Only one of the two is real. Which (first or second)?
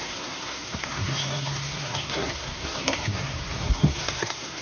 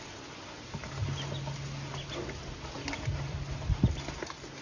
second